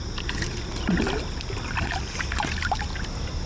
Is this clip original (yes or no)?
yes